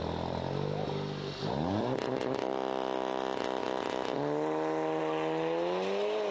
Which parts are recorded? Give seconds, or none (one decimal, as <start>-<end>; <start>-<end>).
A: 0.0-6.3